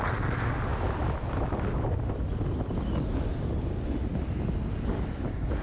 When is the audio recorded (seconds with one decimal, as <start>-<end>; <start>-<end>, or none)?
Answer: 0.0-5.6